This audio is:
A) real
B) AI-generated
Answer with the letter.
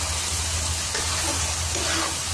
A